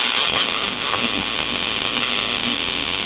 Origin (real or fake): real